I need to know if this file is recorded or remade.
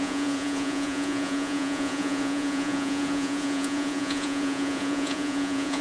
remade